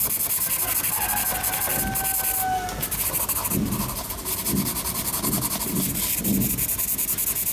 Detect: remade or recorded recorded